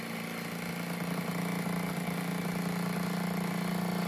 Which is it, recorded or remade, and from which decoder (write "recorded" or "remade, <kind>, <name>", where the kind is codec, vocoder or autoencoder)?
recorded